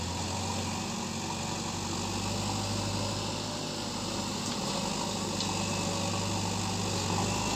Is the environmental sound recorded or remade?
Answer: recorded